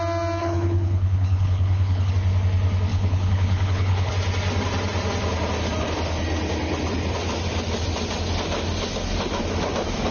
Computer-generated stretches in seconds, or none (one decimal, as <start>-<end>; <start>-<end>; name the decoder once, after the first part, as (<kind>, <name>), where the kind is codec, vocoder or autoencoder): 0.4-2.1 (codec, HILCodec); 2.9-4.1